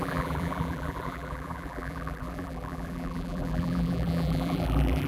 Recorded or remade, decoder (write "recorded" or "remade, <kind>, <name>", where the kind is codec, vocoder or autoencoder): remade, vocoder, BigVGAN v2